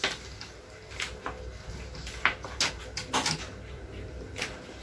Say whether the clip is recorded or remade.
recorded